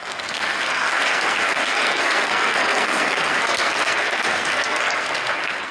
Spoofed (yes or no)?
yes